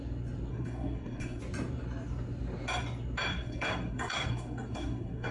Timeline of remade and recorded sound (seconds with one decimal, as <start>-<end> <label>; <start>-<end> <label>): 0.0-0.5 recorded; 0.5-1.4 remade; 1.4-3.3 recorded; 3.3-5.3 remade